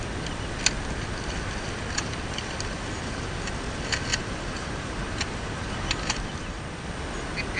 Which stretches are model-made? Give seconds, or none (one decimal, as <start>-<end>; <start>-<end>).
4.1-6.6